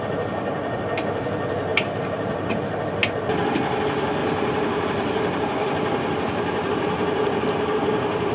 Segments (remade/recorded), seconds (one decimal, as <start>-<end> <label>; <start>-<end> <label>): 0.0-1.7 recorded; 1.7-2.6 remade; 2.6-4.2 recorded; 4.2-8.3 remade